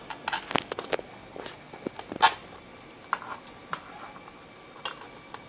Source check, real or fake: real